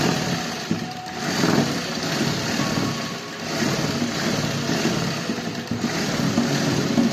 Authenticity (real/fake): real